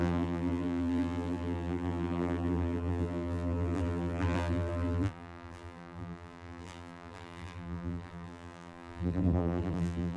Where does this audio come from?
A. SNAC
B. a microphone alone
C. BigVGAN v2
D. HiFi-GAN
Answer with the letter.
C